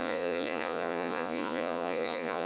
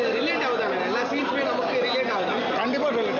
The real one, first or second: second